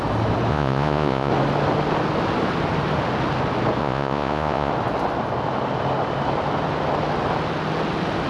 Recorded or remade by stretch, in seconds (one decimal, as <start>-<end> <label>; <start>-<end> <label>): 0.0-0.5 recorded; 0.5-1.3 remade; 1.3-3.8 recorded; 3.8-4.7 remade; 4.7-8.3 recorded